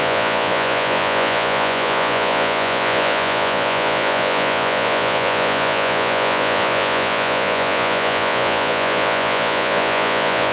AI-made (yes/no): yes